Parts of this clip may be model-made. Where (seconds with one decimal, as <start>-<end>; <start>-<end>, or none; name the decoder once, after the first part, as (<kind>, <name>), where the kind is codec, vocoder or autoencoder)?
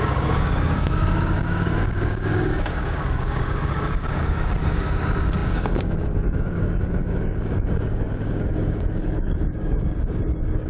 0.0-10.7 (codec, DAC)